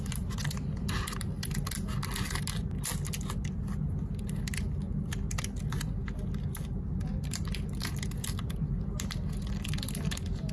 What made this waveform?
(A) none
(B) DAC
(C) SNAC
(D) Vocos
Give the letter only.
A